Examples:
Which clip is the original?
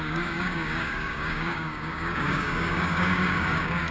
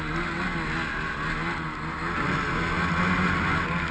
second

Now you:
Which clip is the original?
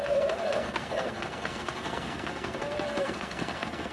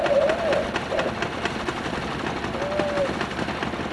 second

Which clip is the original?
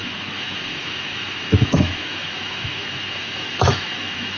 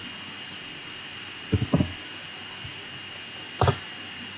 second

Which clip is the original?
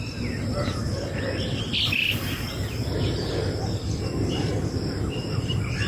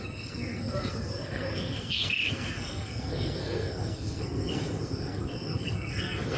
first